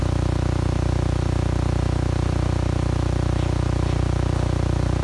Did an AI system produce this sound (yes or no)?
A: no